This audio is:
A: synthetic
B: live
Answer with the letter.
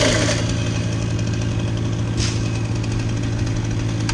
B